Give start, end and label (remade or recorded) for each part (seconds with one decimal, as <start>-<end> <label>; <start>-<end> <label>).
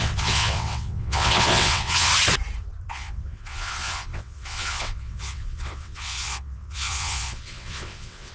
0.0-2.1 remade; 2.1-2.9 recorded; 2.9-8.3 remade